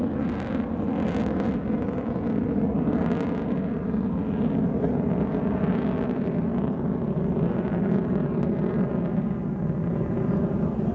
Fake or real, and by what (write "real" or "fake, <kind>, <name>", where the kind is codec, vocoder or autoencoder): real